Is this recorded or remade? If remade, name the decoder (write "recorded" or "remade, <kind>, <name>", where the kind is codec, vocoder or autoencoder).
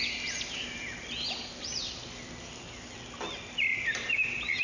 recorded